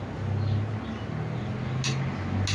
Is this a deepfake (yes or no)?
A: no